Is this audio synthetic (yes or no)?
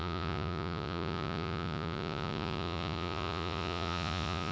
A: yes